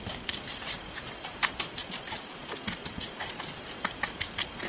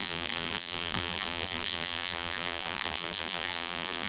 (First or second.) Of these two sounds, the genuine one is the first